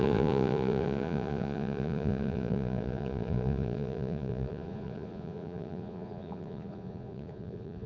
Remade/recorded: remade